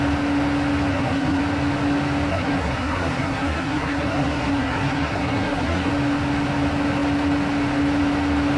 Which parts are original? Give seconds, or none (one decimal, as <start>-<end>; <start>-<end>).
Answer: 0.0-0.9; 1.4-2.3; 5.9-8.6

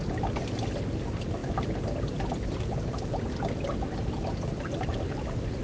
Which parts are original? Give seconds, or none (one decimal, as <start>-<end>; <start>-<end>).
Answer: 0.0-5.6

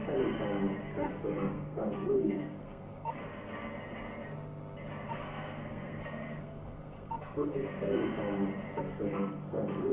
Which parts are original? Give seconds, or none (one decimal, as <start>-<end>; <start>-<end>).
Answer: 0.0-0.8; 3.2-5.1; 8.0-8.8